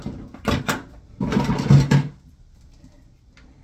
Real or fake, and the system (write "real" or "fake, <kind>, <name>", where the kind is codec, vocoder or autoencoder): real